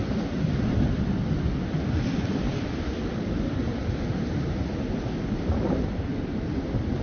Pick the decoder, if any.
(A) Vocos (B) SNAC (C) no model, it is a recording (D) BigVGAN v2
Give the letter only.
C